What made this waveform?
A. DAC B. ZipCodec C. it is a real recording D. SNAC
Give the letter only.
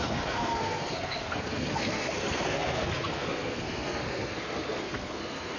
D